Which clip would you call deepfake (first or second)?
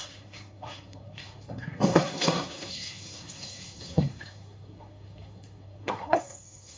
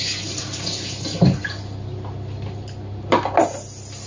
first